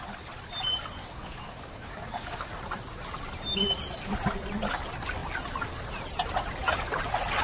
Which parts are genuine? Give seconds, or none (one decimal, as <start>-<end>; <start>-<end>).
0.0-1.0; 2.5-7.4